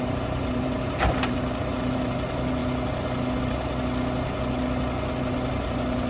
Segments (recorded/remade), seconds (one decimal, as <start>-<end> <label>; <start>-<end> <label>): 0.0-2.6 remade; 2.6-5.5 recorded; 5.5-6.1 remade